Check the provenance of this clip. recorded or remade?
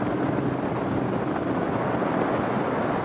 recorded